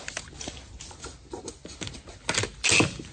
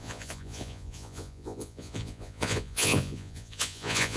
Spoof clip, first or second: second